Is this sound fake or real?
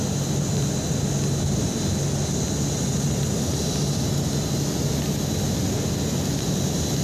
real